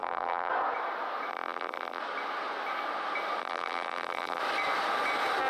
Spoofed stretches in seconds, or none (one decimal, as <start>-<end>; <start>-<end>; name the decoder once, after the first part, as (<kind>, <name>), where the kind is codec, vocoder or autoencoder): 0.0-0.5 (vocoder, BigVGAN v2); 1.3-2.0; 3.4-4.4